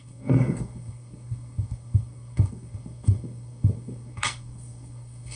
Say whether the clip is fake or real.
fake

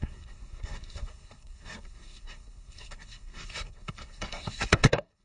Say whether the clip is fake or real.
fake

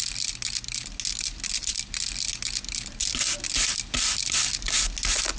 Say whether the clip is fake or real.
real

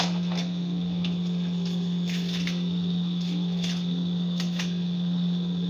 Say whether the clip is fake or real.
fake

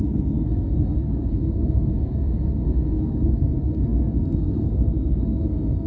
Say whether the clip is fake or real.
fake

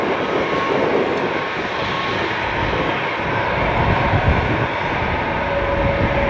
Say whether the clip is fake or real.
real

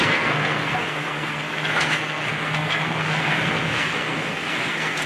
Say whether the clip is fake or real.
fake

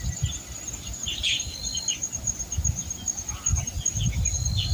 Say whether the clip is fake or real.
real